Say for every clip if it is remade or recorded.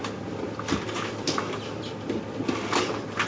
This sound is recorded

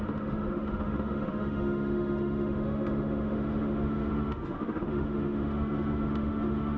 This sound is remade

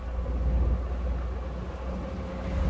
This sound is recorded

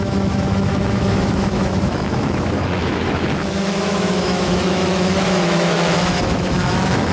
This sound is remade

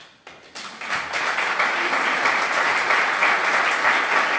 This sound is recorded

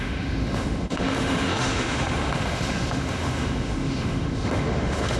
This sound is remade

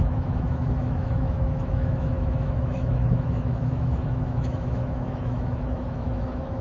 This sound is remade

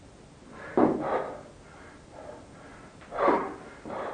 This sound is recorded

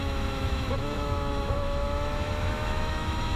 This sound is remade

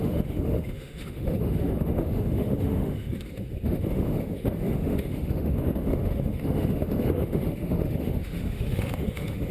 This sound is remade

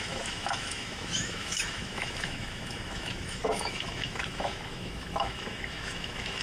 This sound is remade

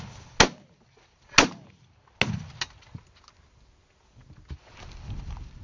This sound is recorded